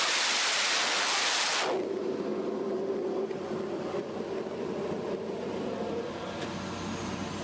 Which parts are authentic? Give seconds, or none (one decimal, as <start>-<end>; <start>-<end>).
0.0-7.4

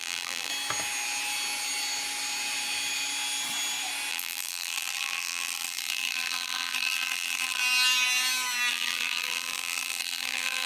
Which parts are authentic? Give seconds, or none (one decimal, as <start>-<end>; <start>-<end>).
0.5-4.1; 7.6-8.7